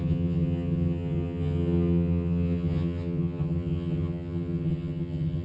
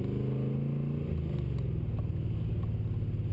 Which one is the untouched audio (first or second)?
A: second